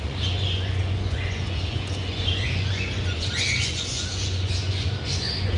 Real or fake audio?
fake